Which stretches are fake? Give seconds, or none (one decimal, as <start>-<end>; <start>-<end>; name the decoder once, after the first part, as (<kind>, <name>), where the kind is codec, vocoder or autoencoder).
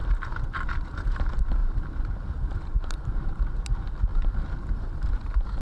0.0-0.9 (vocoder, BigVGAN v2); 1.6-3.5; 4.1-5.6